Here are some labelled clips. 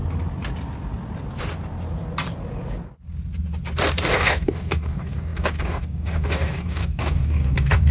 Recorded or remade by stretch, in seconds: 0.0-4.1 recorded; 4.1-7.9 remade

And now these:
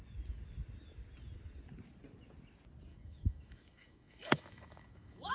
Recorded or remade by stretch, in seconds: 0.0-2.9 recorded; 2.9-5.3 remade

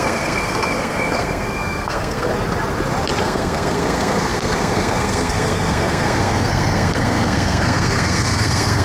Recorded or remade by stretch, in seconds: 0.0-2.3 remade; 2.3-3.2 recorded; 3.2-8.8 remade

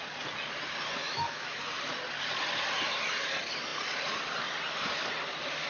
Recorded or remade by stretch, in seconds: 0.0-1.0 recorded; 1.0-1.6 remade; 1.6-5.7 recorded

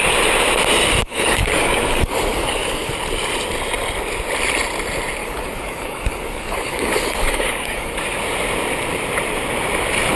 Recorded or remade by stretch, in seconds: 0.0-1.0 recorded; 1.0-2.9 remade; 2.9-5.2 recorded; 5.2-7.9 remade; 7.9-10.2 recorded

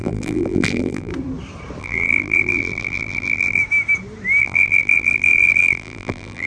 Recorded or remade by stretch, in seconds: 0.0-1.1 remade; 1.1-1.8 recorded; 1.8-3.6 remade; 3.6-4.4 recorded; 4.4-6.5 remade

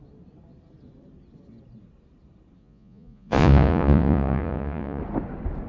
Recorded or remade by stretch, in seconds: 0.0-2.6 recorded; 2.6-5.0 remade; 5.0-5.7 recorded

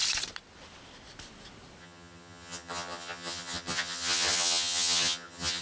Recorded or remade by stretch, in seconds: 0.0-1.8 recorded; 1.8-5.6 remade